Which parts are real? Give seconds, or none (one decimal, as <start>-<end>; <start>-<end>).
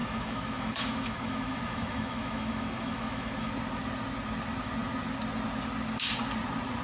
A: 3.5-6.8